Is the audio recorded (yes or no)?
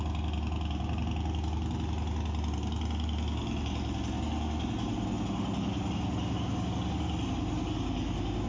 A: yes